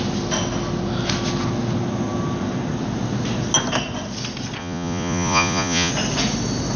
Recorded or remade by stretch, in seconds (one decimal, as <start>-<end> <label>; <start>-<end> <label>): 0.0-4.6 recorded; 4.6-5.9 remade; 5.9-6.8 recorded